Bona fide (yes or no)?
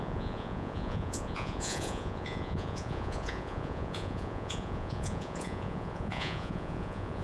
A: no